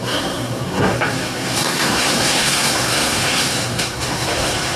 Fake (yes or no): yes